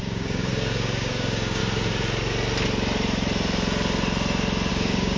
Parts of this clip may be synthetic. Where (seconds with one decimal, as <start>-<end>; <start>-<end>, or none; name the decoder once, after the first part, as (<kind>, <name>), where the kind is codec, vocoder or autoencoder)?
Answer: 0.0-1.6 (codec, DAC); 4.7-5.2